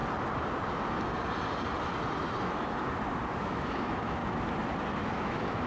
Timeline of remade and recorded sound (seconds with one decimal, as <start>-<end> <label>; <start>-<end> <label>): 0.0-3.4 recorded; 3.4-4.2 remade; 4.2-5.0 recorded; 5.0-5.7 remade